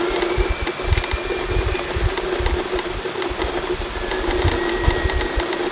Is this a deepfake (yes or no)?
no